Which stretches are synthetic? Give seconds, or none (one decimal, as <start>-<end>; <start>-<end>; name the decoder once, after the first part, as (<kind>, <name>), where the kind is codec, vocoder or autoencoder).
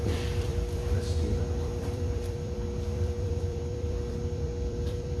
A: 0.0-5.2 (vocoder, BigVGAN v2)